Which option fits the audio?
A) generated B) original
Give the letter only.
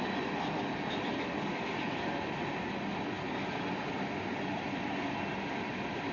B